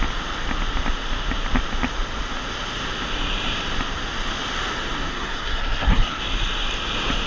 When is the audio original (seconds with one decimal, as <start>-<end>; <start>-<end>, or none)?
0.0-5.1; 6.2-7.3